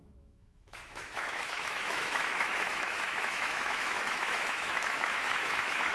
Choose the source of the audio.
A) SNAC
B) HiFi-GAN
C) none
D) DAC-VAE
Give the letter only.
D